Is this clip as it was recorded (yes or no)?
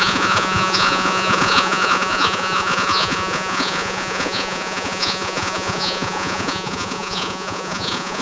no